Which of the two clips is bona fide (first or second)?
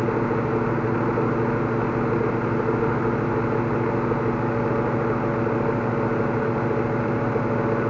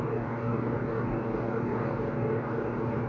first